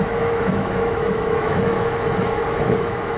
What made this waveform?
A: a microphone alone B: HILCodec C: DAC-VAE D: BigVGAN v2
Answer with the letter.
C